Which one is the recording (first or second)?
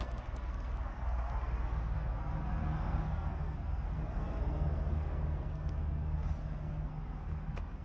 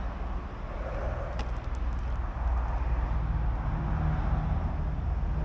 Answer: second